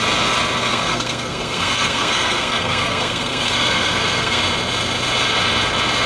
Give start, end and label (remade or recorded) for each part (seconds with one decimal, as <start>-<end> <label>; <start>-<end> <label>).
0.0-0.7 recorded; 0.7-4.4 remade; 4.4-6.1 recorded